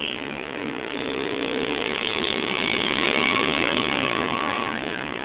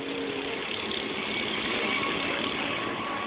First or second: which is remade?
first